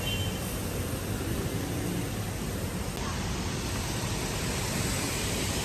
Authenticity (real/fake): real